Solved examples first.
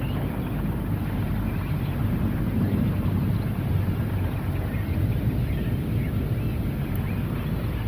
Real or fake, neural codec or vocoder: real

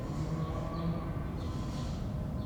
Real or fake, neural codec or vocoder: real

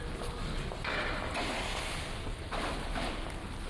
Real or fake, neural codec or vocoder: real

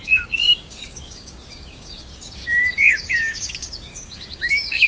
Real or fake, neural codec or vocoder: fake, codec, DAC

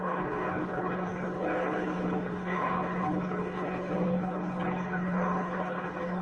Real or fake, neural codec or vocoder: fake, codec, HILCodec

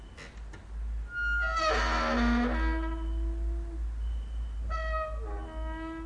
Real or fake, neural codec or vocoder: real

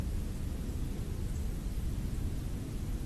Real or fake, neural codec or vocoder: real